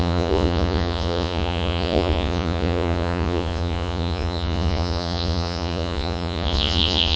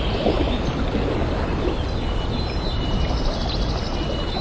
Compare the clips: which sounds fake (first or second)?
first